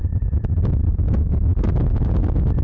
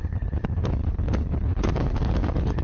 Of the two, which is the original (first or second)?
first